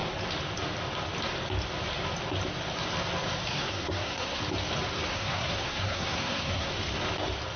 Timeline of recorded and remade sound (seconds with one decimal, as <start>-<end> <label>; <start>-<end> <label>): 0.0-3.5 recorded; 3.5-4.4 remade; 4.4-5.1 recorded; 5.1-6.7 remade; 6.7-7.6 recorded